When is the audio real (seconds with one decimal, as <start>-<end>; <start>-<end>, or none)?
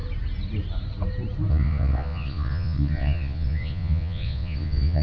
0.0-1.5